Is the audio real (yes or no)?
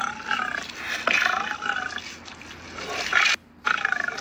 yes